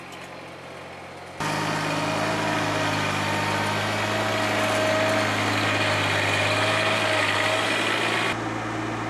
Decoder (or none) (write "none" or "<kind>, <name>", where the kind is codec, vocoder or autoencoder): none